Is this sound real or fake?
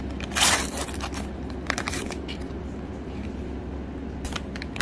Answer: real